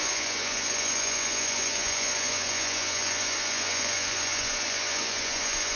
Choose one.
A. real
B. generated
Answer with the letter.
B